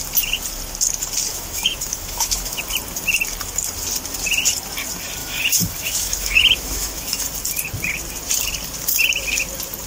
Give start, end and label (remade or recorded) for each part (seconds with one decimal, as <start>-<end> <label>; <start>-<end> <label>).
0.0-1.3 recorded; 1.3-2.6 remade; 2.6-5.2 recorded; 5.2-7.2 remade; 7.2-9.9 recorded